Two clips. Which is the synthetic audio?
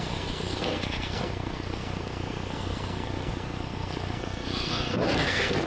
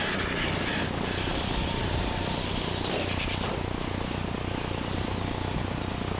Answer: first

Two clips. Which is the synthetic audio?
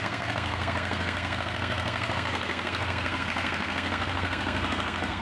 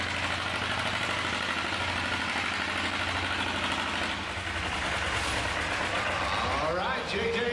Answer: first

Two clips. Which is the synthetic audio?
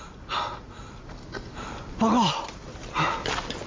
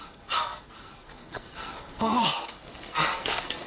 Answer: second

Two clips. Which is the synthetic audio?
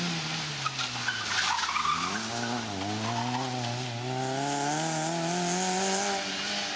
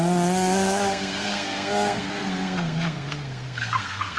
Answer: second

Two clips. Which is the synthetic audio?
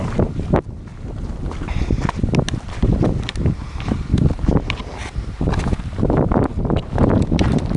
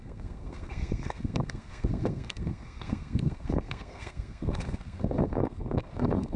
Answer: second